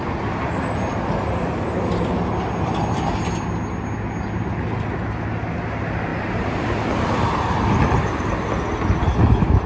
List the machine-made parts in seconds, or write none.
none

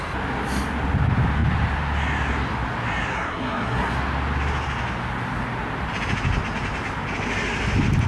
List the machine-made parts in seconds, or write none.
3.1-3.9 (codec, SNAC)